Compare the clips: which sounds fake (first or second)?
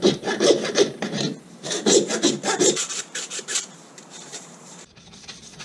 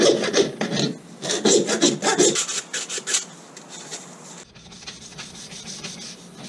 first